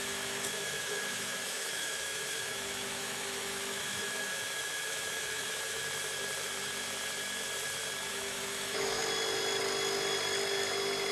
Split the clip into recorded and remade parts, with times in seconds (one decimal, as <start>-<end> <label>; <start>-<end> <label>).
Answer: 0.0-5.8 remade; 5.8-8.1 recorded; 8.1-9.0 remade; 9.0-11.1 recorded

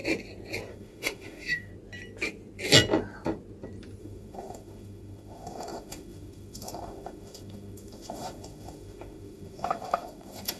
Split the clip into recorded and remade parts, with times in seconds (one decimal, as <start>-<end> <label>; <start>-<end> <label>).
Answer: 0.0-0.7 recorded; 0.7-1.7 remade; 1.7-4.0 recorded; 4.0-10.6 remade

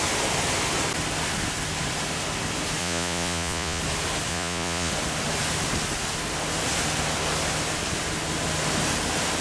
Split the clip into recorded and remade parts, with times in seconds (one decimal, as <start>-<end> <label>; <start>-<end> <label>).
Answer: 0.0-2.8 recorded; 2.8-3.8 remade; 3.8-4.3 recorded; 4.3-4.9 remade; 4.9-9.4 recorded

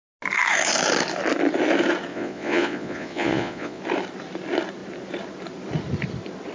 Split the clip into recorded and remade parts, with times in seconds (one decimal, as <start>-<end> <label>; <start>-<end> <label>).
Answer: 0.0-2.1 recorded; 2.1-3.8 remade; 3.8-6.5 recorded

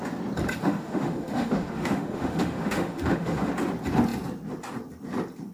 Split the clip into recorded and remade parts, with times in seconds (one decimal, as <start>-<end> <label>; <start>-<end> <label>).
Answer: 0.0-0.6 recorded; 0.6-3.5 remade; 3.5-5.5 recorded

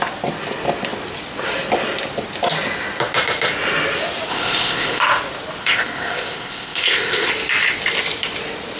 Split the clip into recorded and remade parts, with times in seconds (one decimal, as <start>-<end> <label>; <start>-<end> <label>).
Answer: 0.0-4.3 recorded; 4.3-5.0 remade; 5.0-5.6 recorded; 5.6-7.3 remade; 7.3-8.8 recorded